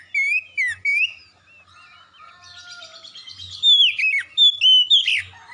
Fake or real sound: real